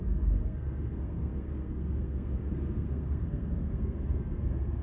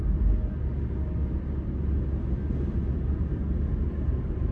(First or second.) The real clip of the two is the second